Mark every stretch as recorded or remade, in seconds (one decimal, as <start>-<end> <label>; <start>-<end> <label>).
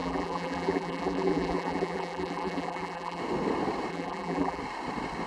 0.0-3.2 remade; 3.2-3.9 recorded; 3.9-4.6 remade; 4.6-5.3 recorded